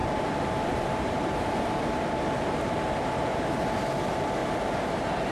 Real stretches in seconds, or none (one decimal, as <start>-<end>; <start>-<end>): 4.4-5.3